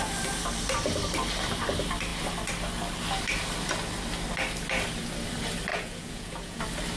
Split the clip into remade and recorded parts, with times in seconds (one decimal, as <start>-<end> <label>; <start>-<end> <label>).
0.0-5.7 recorded; 5.7-6.6 remade; 6.6-7.0 recorded